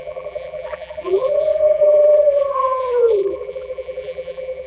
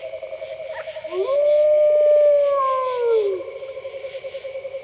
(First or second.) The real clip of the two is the second